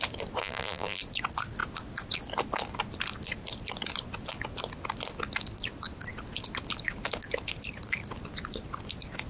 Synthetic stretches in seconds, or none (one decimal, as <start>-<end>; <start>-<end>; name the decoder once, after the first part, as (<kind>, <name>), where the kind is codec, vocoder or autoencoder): 0.4-1.0 (vocoder, BigVGAN v2)